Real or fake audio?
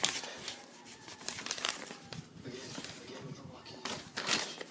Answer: fake